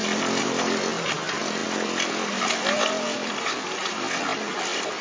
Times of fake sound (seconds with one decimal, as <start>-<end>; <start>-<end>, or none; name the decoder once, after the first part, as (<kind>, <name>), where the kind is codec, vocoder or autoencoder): none